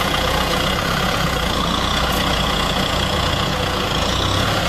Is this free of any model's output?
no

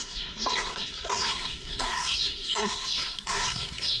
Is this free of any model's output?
no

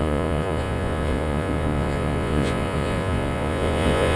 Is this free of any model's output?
no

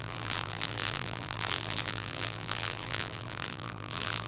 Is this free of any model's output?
no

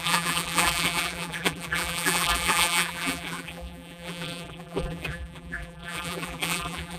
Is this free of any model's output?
no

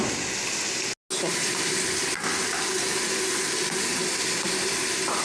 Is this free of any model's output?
yes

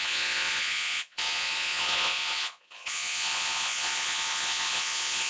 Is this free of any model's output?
no